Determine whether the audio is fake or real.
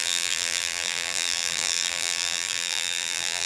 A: fake